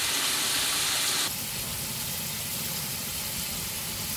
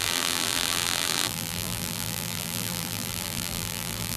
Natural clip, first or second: first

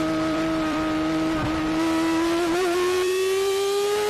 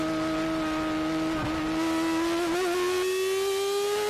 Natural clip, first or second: second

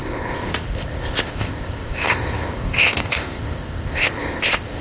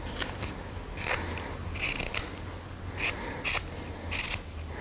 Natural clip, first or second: second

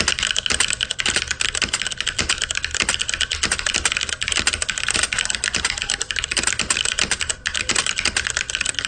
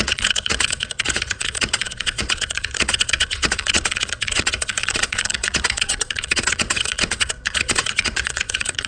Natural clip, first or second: first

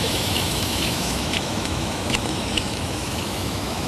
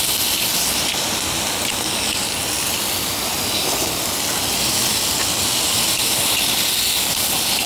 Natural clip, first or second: second